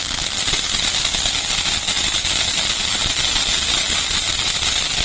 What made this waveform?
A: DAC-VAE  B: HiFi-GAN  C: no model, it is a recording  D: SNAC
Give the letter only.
C